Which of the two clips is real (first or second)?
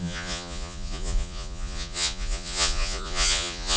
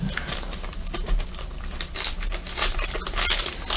second